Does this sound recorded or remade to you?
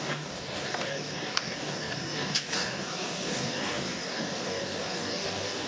remade